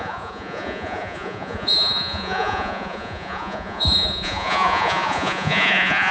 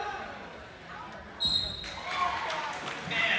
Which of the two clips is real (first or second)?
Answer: second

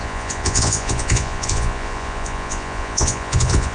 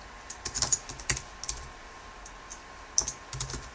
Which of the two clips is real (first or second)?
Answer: second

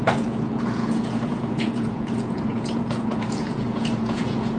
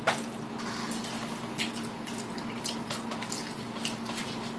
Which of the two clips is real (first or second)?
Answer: second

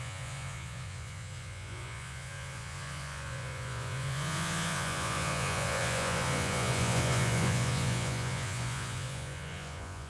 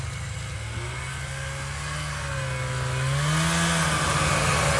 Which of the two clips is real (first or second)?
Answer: second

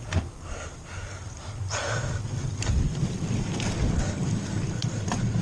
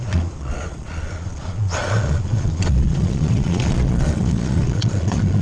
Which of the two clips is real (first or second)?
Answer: first